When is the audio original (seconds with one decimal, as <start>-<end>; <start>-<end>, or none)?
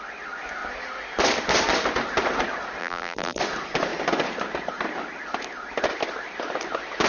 0.0-2.8; 3.4-7.1